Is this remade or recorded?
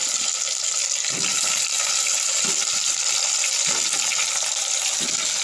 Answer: recorded